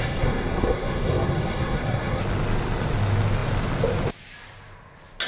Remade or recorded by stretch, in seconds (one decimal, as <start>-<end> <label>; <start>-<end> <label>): 0.0-2.2 remade; 2.2-5.3 recorded